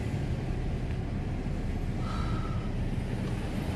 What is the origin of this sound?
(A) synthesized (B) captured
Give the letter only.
B